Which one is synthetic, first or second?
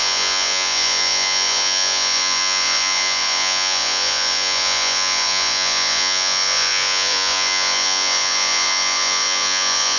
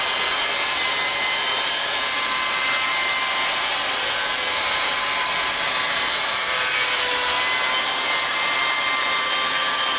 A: first